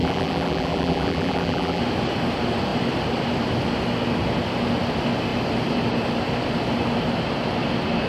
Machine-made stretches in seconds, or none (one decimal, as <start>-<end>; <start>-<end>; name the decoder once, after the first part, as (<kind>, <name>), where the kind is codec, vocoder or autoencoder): 0.0-1.8 (vocoder, BigVGAN v2)